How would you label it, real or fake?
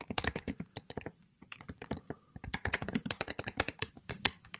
fake